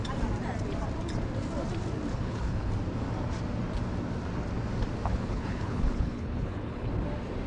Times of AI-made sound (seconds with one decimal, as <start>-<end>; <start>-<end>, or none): 2.1-2.7; 5.1-6.9